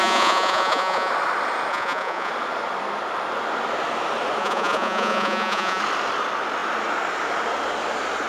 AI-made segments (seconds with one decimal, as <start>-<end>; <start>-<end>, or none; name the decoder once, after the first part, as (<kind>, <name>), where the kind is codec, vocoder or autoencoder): 0.0-1.1 (vocoder, Vocos); 1.7-2.3; 4.4-5.8